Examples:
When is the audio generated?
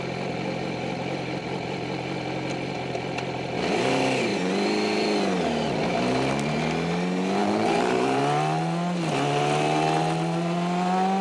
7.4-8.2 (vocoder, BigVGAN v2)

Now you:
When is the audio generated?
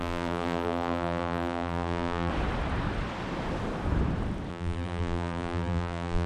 0.0-2.3 (vocoder, BigVGAN v2); 4.5-6.3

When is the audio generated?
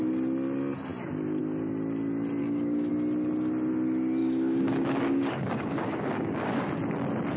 2.4-2.9 (codec, DAC); 4.2-6.7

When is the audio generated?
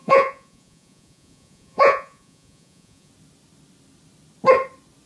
0.0-3.1 (vocoder, Vocos)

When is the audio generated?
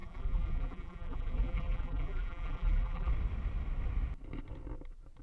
0.0-3.1 (vocoder, BigVGAN v2)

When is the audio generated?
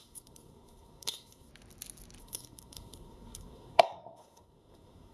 0.0-1.5 (codec, SNAC); 2.2-5.1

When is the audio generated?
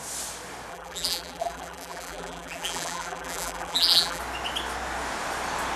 0.7-4.2 (vocoder, BigVGAN v2)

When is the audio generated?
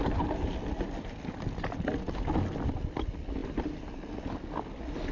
none